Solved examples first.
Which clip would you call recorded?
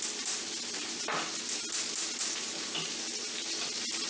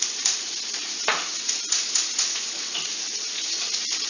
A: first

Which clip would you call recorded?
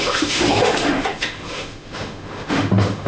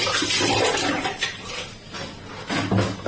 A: second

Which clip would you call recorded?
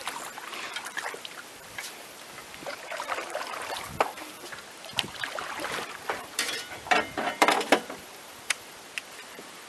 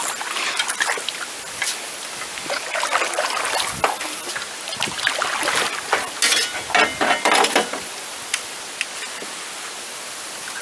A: second